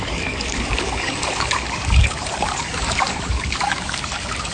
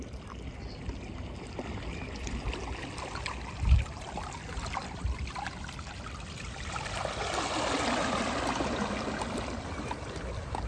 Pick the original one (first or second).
second